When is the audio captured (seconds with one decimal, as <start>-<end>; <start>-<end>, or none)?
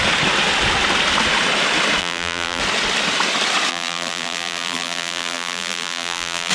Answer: 0.0-2.0; 2.6-3.7